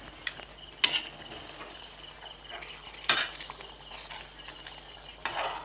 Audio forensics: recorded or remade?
recorded